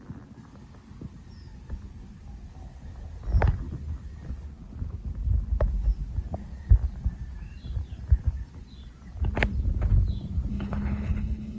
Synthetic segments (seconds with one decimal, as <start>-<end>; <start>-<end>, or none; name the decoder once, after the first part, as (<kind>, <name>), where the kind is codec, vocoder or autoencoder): 10.5-11.6 (codec, HILCodec)